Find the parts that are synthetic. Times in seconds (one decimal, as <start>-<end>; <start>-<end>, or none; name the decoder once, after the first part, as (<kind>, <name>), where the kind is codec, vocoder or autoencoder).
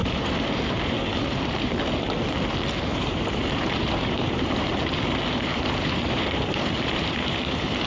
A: 0.0-1.7 (vocoder, BigVGAN v2); 2.9-7.9